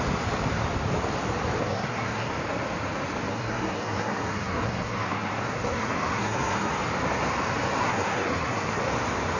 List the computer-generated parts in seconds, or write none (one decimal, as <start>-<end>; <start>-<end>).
1.6-2.3; 3.3-6.7; 7.8-8.8